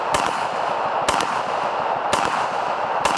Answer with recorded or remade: recorded